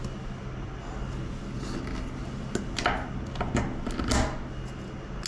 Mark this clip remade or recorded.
recorded